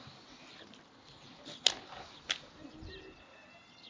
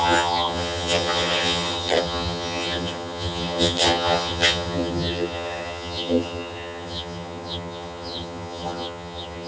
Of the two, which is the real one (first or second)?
first